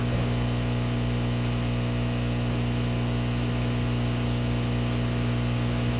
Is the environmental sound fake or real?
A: real